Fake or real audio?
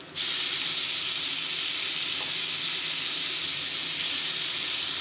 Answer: real